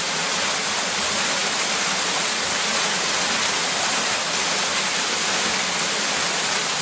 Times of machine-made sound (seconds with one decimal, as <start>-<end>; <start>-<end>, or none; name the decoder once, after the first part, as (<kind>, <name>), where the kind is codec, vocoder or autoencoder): none